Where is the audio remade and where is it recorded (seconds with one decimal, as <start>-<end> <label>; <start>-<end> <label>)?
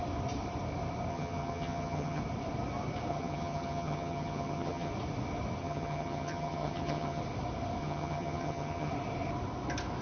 0.0-1.1 recorded; 1.1-2.2 remade; 2.2-3.1 recorded; 3.1-4.9 remade; 4.9-5.6 recorded; 5.6-7.2 remade; 7.2-7.8 recorded; 7.8-8.9 remade; 8.9-10.0 recorded